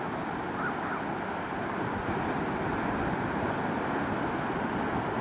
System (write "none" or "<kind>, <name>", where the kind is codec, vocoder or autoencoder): none